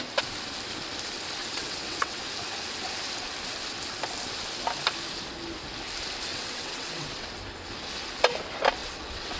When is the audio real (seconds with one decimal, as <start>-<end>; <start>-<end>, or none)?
0.0-1.4; 2.2-6.3; 7.3-8.8